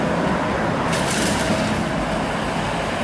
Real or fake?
real